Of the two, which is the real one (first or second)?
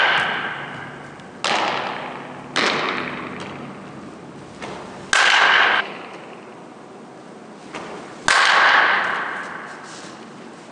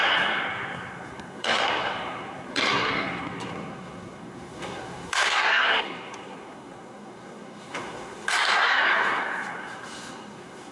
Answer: first